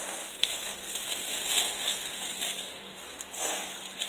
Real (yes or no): no